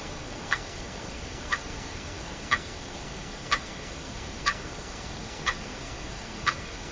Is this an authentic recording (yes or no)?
no